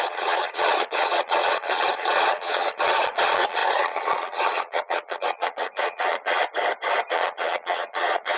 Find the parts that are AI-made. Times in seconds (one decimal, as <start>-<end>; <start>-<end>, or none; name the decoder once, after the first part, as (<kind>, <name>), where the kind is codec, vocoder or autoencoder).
0.0-6.4 (vocoder, Vocos); 7.1-8.4